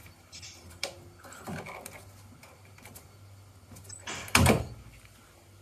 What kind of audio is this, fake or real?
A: real